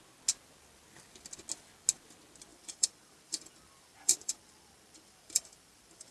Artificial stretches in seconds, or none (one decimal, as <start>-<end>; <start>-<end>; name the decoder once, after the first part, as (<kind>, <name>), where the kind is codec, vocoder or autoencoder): 2.5-6.1 (vocoder, BigVGAN v2)